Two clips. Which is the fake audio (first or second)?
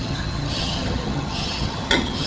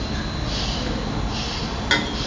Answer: first